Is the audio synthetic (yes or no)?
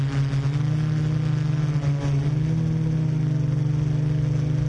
no